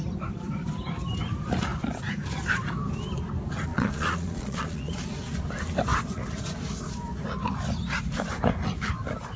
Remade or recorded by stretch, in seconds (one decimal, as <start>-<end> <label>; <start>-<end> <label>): 0.0-3.7 recorded; 3.7-4.9 remade; 4.9-9.4 recorded